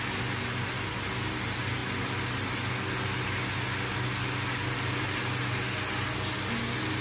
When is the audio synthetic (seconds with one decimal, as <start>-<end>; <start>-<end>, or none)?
none